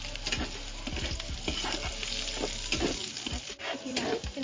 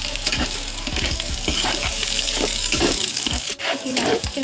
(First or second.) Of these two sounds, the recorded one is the first